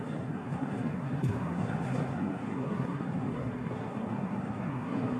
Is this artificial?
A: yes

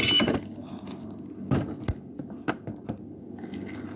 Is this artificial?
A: no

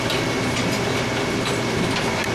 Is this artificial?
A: no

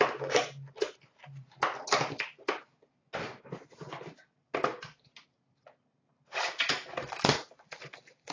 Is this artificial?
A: no